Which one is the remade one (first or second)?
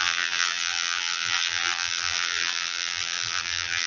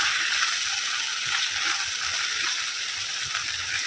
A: first